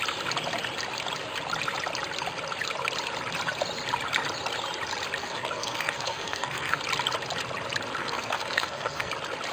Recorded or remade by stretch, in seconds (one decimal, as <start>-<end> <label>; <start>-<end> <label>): 0.0-5.2 recorded; 5.2-6.8 remade; 6.8-8.0 recorded; 8.0-9.1 remade; 9.1-9.5 recorded

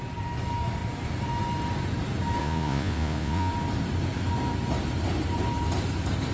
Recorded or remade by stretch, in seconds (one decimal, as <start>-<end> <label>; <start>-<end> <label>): 0.0-2.4 recorded; 2.4-3.5 remade; 3.5-6.3 recorded

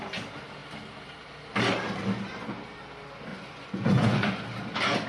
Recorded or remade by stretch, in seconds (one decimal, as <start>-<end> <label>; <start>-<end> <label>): 0.0-3.3 recorded; 3.3-4.4 remade; 4.4-5.1 recorded

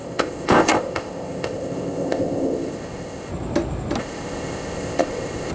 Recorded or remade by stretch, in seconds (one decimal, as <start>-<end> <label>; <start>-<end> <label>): 0.0-3.3 remade; 3.3-4.0 recorded; 4.0-5.5 remade

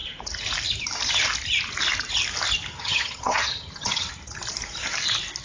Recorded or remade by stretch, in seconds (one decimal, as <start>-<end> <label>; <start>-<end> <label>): 0.0-2.7 recorded; 2.7-4.1 remade; 4.1-5.4 recorded

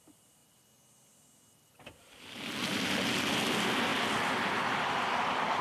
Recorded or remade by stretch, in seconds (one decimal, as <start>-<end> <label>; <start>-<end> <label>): 0.0-5.6 recorded

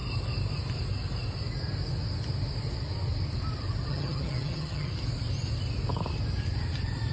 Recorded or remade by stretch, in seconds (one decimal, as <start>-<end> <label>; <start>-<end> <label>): 0.0-3.9 recorded; 3.9-4.9 remade; 4.9-7.1 recorded